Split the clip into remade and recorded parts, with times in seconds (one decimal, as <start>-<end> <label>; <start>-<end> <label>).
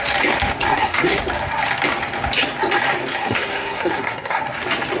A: 0.0-0.7 recorded; 0.7-1.2 remade; 1.2-3.1 recorded; 3.1-4.4 remade; 4.4-5.0 recorded